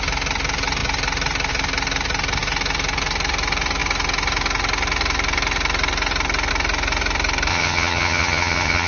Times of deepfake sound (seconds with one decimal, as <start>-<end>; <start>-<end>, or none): 7.5-8.9